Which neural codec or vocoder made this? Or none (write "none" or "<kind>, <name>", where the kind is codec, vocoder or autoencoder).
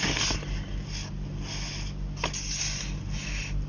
none